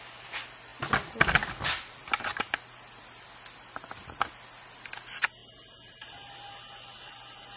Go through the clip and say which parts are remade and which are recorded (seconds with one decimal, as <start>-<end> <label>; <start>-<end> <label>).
0.0-5.4 recorded; 5.4-6.5 remade; 6.5-7.6 recorded